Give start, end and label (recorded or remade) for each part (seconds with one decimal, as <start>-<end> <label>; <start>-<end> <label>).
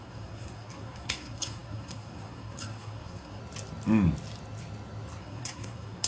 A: 0.0-3.4 remade; 3.4-5.2 recorded; 5.2-6.1 remade